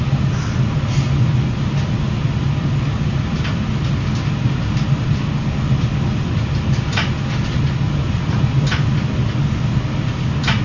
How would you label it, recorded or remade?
recorded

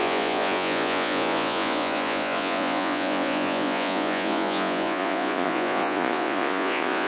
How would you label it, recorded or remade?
remade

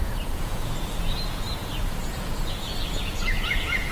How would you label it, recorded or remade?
remade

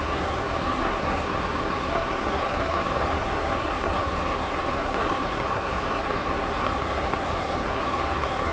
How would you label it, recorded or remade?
remade